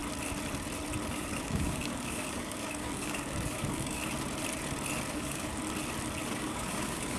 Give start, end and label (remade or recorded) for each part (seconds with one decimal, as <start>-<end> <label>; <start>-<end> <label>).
0.0-1.1 recorded; 1.1-4.0 remade; 4.0-5.1 recorded; 5.1-5.5 remade; 5.5-6.3 recorded; 6.3-7.2 remade